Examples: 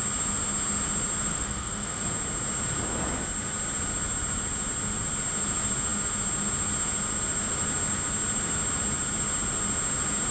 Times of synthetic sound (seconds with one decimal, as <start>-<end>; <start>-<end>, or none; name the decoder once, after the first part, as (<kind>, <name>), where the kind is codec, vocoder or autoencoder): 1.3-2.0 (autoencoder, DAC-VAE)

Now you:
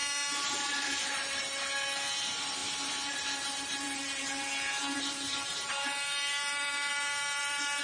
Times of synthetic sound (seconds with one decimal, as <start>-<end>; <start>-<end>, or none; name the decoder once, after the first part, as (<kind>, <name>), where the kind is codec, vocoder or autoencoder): 0.0-7.8 (vocoder, BigVGAN v2)

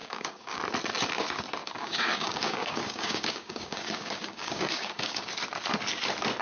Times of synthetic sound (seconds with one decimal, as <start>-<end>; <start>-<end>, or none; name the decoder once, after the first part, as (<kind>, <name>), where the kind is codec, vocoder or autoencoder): 0.0-0.6 (codec, DAC); 1.6-5.3

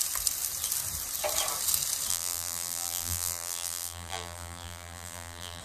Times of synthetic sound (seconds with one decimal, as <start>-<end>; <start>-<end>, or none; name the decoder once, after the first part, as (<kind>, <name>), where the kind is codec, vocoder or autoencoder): 2.1-5.6 (vocoder, BigVGAN v2)

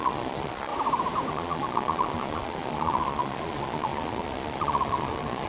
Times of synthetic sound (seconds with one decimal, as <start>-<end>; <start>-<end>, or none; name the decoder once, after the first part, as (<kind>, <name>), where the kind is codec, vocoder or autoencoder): 0.0-0.7 (vocoder, Vocos); 1.3-5.5